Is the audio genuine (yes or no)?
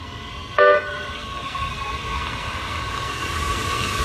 no